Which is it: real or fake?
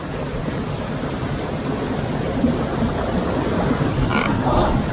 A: real